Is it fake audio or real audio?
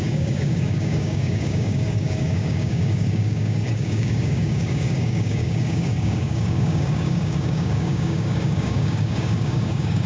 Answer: fake